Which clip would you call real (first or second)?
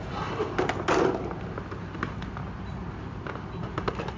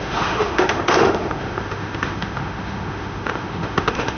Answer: first